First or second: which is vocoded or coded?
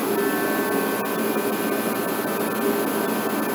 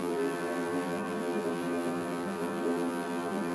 second